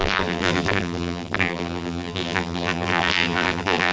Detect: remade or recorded remade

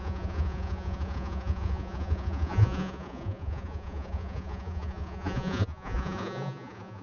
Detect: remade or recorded remade